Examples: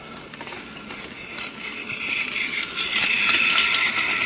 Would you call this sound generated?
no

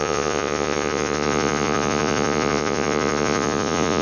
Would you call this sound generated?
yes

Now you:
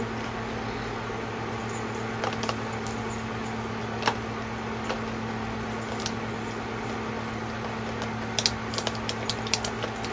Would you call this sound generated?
no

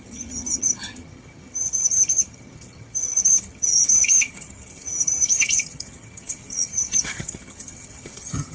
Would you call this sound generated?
yes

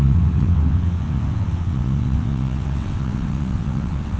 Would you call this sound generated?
yes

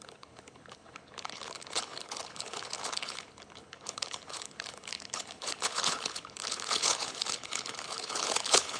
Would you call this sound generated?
yes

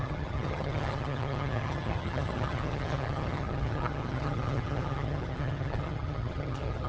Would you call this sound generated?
yes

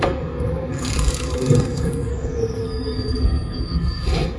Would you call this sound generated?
yes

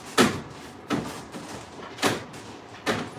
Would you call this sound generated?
yes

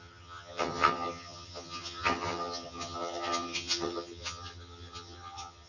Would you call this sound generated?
yes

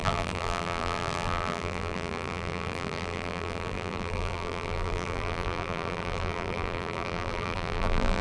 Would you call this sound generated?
yes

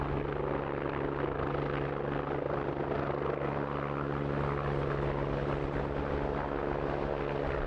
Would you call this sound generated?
no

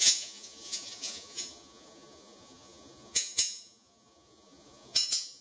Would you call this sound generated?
yes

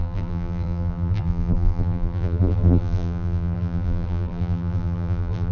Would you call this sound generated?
yes